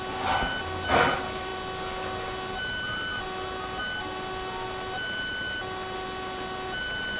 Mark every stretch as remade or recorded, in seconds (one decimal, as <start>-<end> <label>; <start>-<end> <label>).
0.0-7.2 recorded